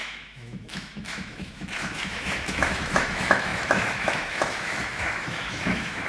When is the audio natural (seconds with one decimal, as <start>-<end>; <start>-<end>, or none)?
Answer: none

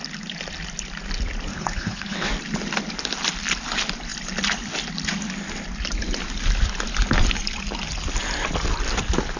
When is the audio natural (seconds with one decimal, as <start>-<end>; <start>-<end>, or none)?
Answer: 0.0-1.5; 2.3-9.4

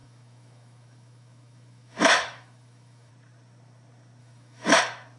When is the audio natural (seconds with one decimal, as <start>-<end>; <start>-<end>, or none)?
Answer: 3.1-4.2; 4.8-5.2

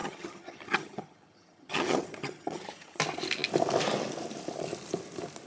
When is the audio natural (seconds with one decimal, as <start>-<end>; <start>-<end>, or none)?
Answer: 3.0-5.5